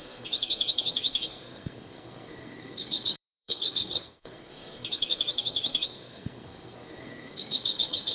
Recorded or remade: remade